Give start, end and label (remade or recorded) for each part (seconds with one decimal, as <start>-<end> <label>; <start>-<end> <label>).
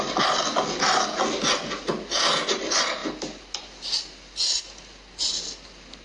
0.0-6.0 recorded